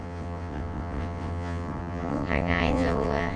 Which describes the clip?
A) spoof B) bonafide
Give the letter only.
A